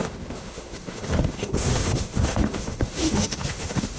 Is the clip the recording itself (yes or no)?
no